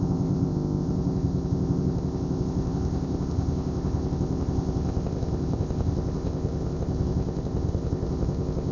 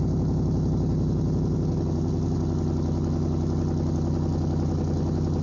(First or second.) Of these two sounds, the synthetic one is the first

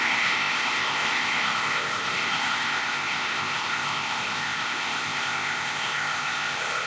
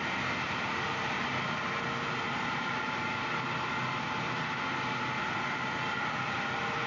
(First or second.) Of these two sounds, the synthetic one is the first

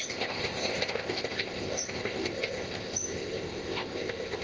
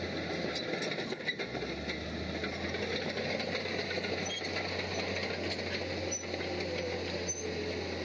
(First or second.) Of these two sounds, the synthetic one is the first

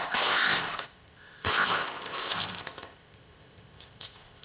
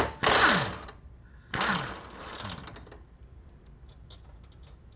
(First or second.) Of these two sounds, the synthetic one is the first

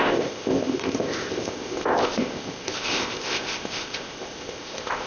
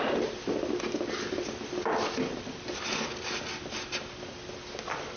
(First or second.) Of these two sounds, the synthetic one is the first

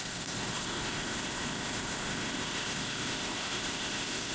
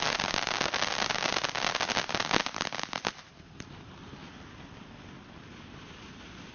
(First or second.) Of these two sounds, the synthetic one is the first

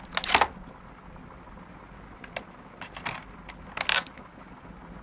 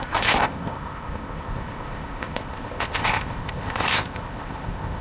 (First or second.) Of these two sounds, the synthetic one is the second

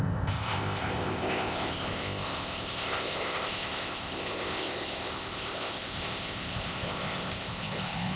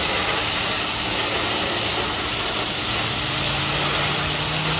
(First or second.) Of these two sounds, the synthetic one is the first